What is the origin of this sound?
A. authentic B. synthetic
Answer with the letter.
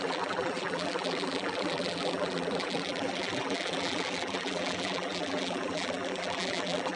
B